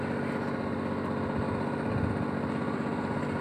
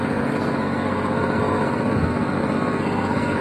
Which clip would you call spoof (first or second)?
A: second